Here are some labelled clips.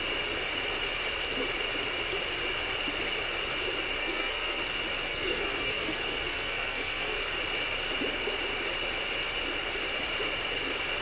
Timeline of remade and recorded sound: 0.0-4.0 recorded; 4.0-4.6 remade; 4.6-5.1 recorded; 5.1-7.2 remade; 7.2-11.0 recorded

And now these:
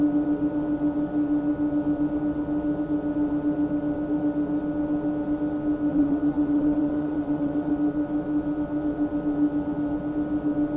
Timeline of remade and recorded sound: 0.0-5.9 recorded; 5.9-7.7 remade; 7.7-10.8 recorded

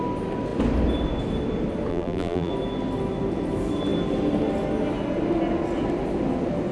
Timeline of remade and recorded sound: 0.0-1.9 recorded; 1.9-2.5 remade; 2.5-6.7 recorded

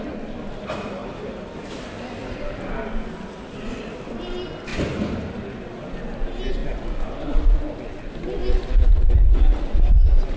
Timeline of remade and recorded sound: 0.0-1.0 recorded; 1.0-1.9 remade; 1.9-10.4 recorded

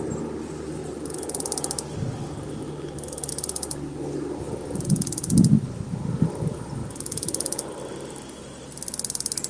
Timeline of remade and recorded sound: 0.0-9.5 recorded

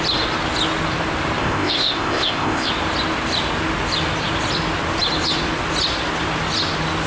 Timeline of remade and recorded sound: 0.0-1.4 recorded; 1.4-2.7 remade; 2.7-7.1 recorded

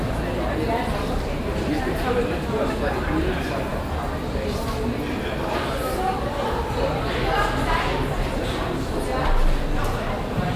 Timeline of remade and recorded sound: 0.0-10.6 recorded

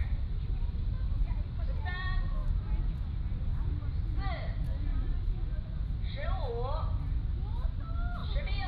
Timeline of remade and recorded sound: 0.0-1.6 remade; 1.6-4.9 recorded; 4.9-6.5 remade; 6.5-8.2 recorded; 8.2-8.7 remade